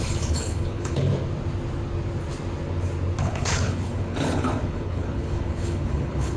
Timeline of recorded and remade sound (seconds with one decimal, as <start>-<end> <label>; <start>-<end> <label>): 0.0-1.1 remade; 1.1-3.2 recorded; 3.2-6.4 remade